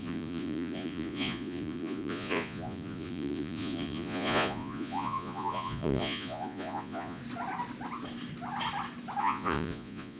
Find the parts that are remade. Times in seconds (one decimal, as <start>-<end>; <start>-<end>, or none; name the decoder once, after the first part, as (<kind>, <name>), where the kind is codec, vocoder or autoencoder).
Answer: 0.0-7.2 (vocoder, Vocos); 9.2-10.2